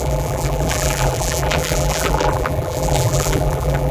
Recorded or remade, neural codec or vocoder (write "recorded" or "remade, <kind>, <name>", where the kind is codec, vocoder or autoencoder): remade, vocoder, BigVGAN v2